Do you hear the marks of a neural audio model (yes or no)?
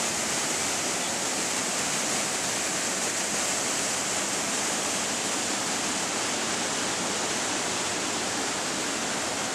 no